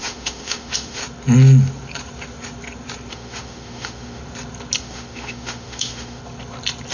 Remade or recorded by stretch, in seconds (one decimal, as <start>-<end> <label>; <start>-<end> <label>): 0.0-1.0 remade; 1.0-3.1 recorded; 3.1-4.2 remade; 4.2-4.8 recorded; 4.8-6.2 remade; 6.2-6.9 recorded